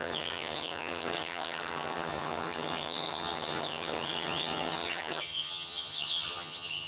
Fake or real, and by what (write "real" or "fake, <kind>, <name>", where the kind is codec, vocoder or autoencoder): fake, vocoder, HiFi-GAN